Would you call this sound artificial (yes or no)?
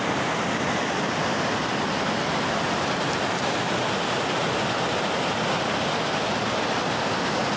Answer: no